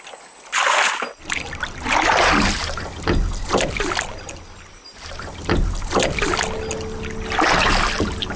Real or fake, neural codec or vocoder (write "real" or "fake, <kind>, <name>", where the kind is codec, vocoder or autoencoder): real